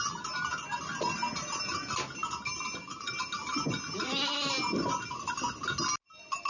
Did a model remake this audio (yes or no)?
no